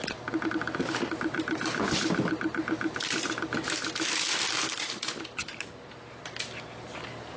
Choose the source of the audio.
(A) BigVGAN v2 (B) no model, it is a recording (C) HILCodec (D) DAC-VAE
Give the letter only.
B